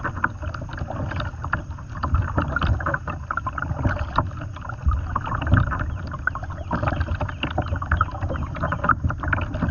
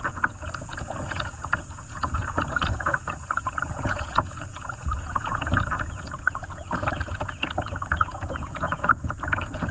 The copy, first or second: second